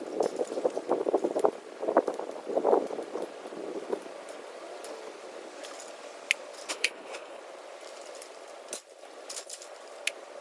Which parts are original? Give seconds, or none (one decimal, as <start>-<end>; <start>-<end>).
0.0-6.7; 7.4-10.4